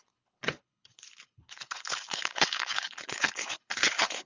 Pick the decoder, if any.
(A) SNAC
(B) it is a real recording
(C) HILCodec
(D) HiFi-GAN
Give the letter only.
C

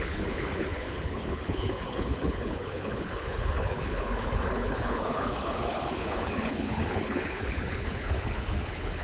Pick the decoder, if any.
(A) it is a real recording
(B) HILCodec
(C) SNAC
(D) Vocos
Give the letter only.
B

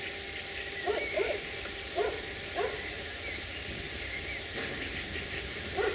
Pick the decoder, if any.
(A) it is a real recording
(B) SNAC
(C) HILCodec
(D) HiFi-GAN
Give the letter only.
A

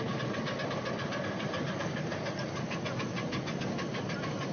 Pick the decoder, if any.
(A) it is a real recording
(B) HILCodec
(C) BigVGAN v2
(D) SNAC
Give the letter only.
A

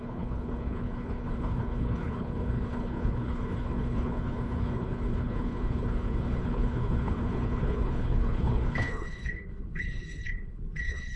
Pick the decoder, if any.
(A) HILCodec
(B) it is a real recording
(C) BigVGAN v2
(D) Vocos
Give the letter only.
A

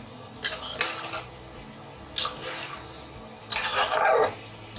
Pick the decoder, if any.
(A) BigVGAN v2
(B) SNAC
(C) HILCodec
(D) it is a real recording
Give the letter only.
D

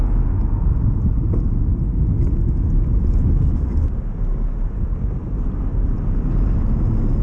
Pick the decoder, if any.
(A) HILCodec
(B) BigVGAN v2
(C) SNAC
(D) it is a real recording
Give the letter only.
D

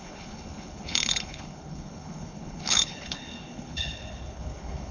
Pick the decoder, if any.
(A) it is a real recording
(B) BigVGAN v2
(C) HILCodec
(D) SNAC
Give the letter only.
C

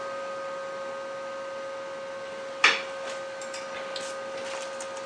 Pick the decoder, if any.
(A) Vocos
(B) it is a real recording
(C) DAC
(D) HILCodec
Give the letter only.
B